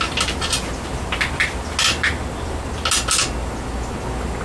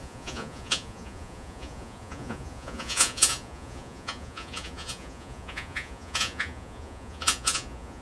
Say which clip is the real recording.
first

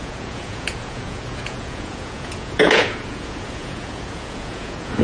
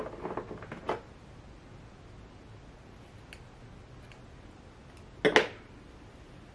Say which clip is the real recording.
second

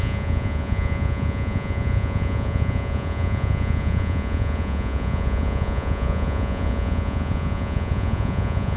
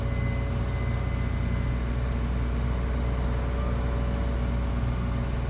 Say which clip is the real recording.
second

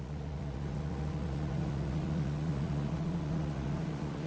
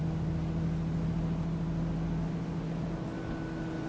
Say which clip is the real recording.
second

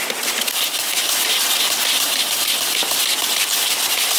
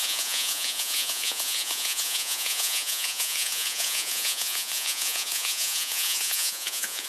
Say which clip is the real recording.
first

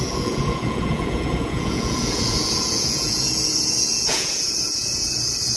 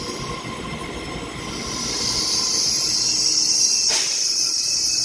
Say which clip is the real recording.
second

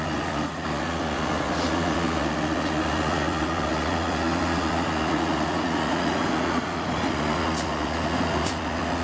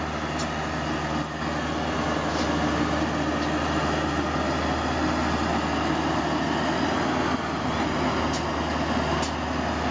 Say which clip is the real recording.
second